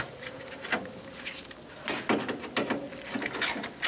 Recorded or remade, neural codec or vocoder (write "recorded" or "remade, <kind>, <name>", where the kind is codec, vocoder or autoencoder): recorded